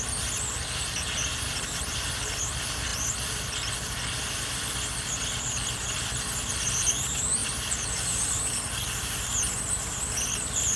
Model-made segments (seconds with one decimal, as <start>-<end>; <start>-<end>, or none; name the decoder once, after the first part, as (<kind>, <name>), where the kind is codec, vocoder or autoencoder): 7.4-8.4 (vocoder, BigVGAN v2)